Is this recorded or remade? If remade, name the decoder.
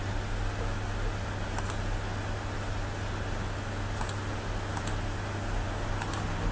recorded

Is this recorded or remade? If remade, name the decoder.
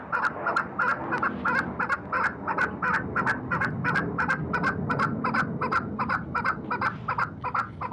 recorded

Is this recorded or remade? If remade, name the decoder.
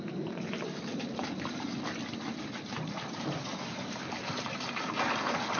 recorded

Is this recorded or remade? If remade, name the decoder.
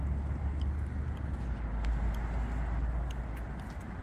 recorded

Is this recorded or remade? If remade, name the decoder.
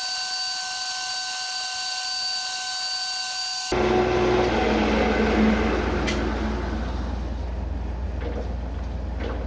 recorded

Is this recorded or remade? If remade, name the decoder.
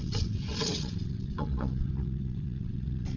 remade, vocoder, WaveNeXt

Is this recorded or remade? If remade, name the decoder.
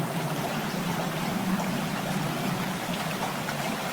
remade, vocoder, BigVGAN v2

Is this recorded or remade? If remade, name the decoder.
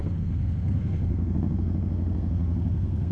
remade, codec, SNAC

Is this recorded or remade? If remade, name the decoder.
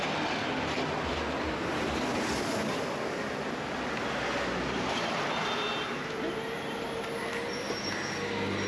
recorded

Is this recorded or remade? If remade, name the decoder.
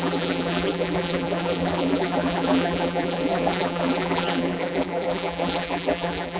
remade, vocoder, BigVGAN v2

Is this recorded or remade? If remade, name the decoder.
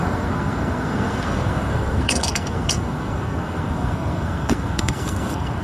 remade, codec, SNAC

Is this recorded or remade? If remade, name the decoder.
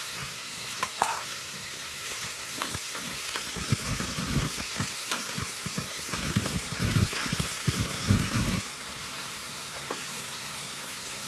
remade, codec, SNAC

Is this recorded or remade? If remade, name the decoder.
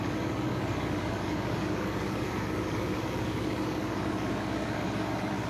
remade, codec, DAC